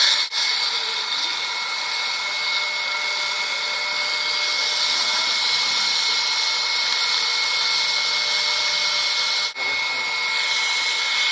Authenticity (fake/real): real